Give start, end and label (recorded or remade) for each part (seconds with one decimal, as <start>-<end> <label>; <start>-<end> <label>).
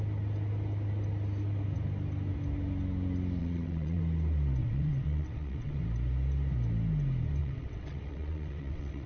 0.0-3.4 recorded; 3.4-4.0 remade; 4.0-4.6 recorded; 4.6-5.8 remade; 5.8-7.4 recorded; 7.4-9.1 remade